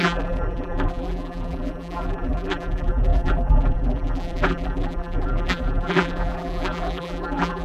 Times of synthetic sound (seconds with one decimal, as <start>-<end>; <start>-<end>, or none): 0.0-7.6